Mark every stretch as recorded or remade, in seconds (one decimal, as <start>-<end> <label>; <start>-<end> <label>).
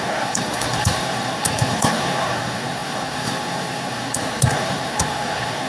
0.0-5.7 remade